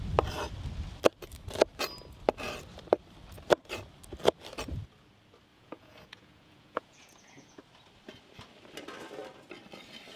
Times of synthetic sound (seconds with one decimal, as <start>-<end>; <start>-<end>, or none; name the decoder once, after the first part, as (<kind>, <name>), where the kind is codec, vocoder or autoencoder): 5.5-7.6 (vocoder, Vocos)